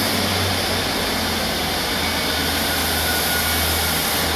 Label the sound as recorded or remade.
recorded